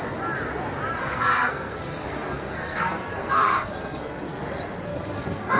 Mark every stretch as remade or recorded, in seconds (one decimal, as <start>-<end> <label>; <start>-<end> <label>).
0.0-1.0 recorded; 1.0-4.4 remade; 4.4-4.9 recorded; 4.9-5.6 remade